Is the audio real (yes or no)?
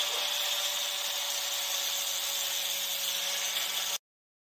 yes